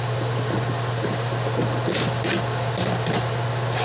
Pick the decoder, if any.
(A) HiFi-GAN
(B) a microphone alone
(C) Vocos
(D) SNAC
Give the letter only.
B